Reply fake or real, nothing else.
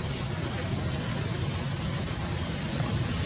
real